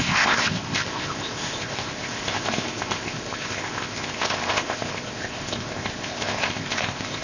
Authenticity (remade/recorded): remade